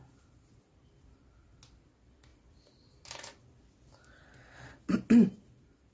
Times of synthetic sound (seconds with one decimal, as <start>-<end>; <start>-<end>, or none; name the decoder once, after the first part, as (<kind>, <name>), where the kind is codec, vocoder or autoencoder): none